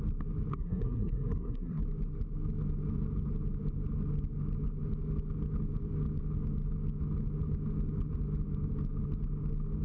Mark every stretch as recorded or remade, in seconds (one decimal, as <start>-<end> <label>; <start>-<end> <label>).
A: 0.0-0.5 recorded; 0.5-1.8 remade; 1.8-9.8 recorded